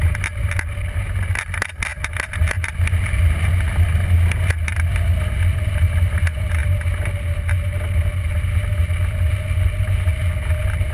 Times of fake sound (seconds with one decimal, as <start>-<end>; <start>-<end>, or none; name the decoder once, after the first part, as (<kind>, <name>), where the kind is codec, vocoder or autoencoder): none